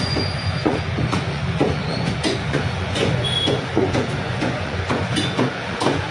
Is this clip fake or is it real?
fake